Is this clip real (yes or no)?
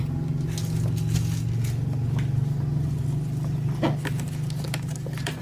yes